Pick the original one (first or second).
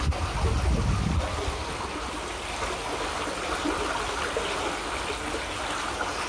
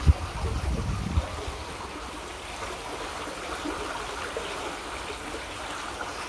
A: first